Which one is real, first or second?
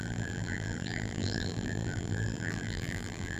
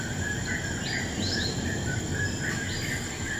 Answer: second